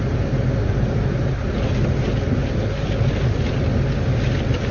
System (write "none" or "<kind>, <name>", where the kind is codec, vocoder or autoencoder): none